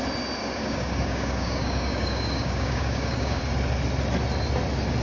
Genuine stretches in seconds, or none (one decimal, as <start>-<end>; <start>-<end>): 0.0-0.4; 3.4-5.0